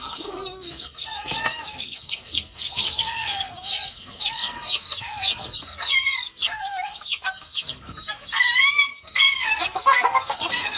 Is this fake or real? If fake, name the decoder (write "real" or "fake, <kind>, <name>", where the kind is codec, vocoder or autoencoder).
fake, codec, SNAC